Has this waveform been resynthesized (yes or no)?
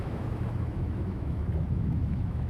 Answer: yes